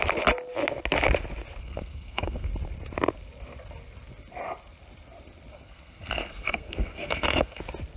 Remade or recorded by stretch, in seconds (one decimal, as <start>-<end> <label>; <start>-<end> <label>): 0.0-1.6 recorded; 1.6-2.5 remade; 2.5-5.5 recorded; 5.5-7.6 remade; 7.6-8.0 recorded